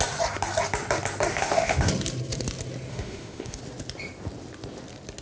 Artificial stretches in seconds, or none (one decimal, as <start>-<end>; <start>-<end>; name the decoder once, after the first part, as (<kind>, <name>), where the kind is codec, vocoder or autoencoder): 1.3-1.9 (autoencoder, DAC-VAE); 2.9-3.6